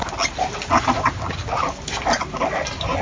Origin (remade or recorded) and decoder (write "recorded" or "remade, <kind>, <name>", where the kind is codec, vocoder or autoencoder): recorded